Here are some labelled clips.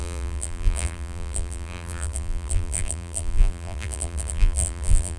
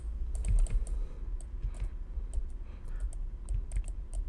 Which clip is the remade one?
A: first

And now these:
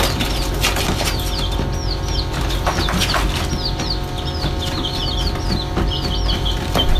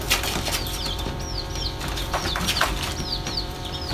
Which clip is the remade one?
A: second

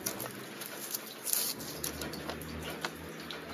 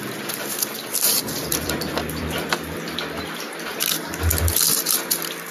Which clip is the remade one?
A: second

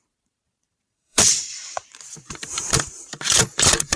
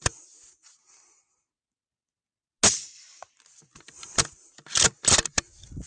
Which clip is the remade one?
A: first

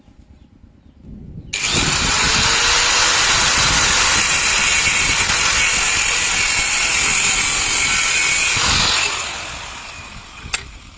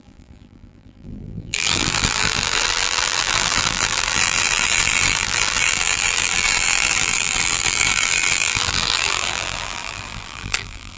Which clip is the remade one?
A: second